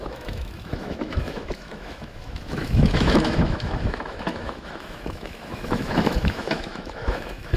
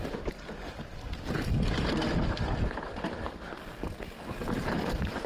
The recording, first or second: second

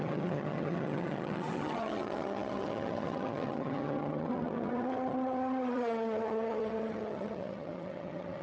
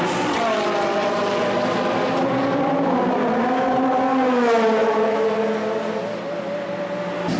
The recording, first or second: second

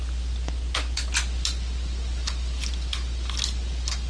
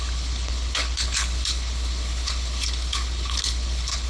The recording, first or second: first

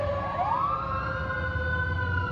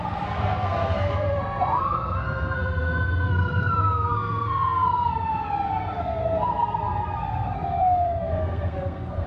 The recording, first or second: first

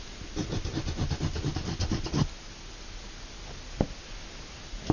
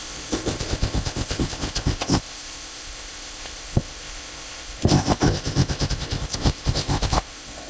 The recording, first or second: first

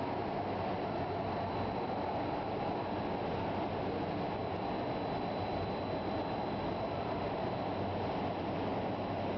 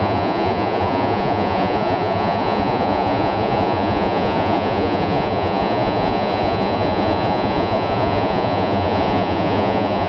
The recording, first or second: first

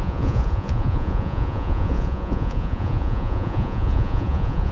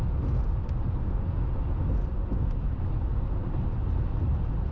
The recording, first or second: second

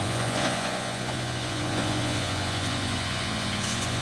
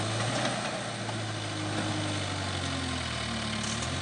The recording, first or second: second